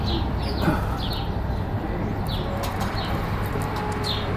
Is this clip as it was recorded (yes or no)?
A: yes